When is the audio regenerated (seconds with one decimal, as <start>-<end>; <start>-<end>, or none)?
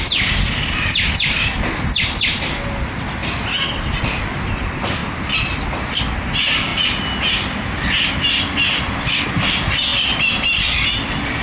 none